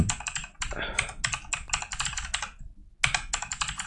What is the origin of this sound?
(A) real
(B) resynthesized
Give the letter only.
A